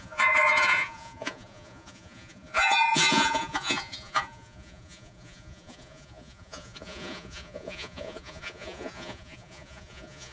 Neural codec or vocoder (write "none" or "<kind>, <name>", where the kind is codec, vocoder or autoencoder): vocoder, Vocos